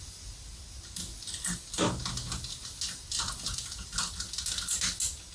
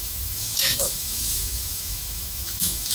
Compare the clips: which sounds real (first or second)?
first